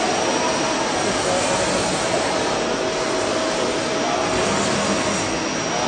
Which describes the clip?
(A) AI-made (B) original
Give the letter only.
B